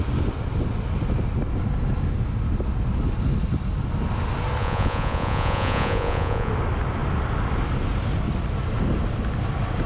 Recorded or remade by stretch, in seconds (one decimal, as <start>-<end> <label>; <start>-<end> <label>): 0.0-4.6 recorded; 4.6-6.5 remade; 6.5-9.9 recorded